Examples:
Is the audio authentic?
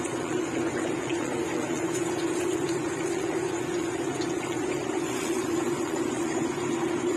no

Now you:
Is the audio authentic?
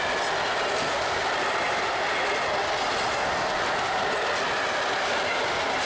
yes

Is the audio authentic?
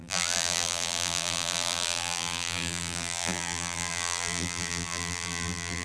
no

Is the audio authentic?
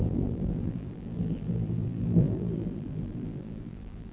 no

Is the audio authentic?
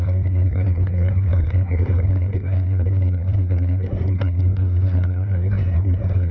no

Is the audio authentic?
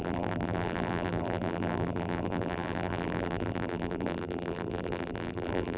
no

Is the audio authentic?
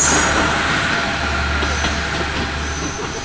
yes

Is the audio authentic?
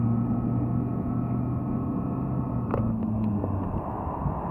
yes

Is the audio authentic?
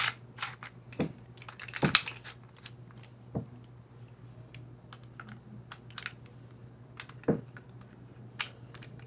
yes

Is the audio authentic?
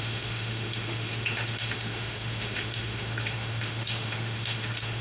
no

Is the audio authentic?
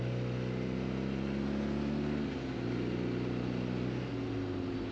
yes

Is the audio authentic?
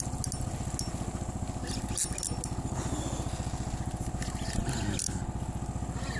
yes